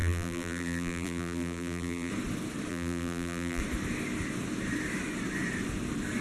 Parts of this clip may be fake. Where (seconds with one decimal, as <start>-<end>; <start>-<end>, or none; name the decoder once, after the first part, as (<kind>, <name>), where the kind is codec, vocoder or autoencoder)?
0.0-2.1 (vocoder, BigVGAN v2); 2.7-3.6